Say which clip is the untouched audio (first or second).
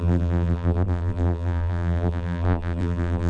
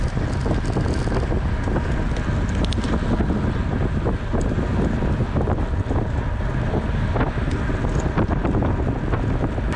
second